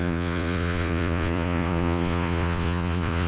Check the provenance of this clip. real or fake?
fake